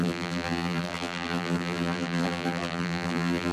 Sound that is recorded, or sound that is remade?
remade